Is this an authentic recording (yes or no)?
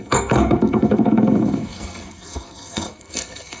no